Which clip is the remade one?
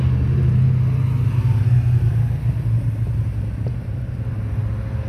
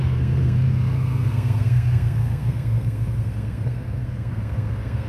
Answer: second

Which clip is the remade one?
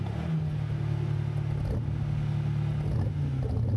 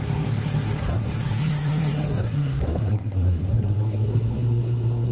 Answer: second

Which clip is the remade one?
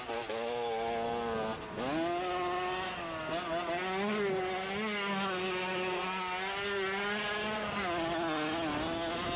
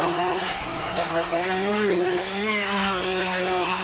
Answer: second